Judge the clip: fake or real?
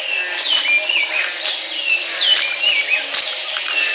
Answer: real